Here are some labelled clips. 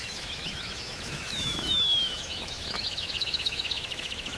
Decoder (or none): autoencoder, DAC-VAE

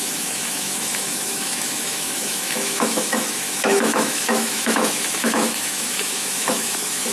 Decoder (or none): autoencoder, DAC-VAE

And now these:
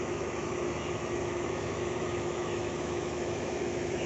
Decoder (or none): autoencoder, DAC-VAE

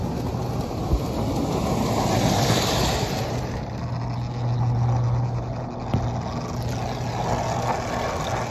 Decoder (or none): none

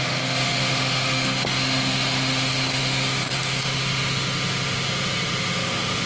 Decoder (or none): autoencoder, DAC-VAE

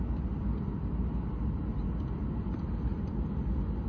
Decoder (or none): none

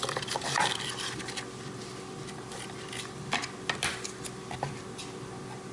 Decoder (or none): none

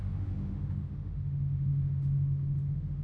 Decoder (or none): autoencoder, DAC-VAE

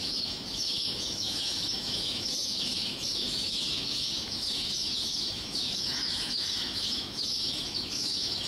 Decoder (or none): autoencoder, DAC-VAE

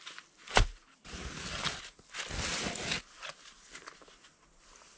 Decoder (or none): none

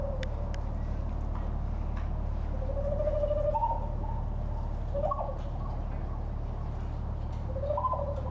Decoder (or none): none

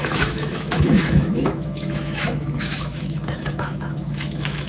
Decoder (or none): autoencoder, DAC-VAE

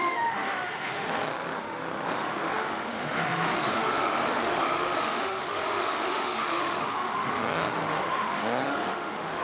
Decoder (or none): autoencoder, DAC-VAE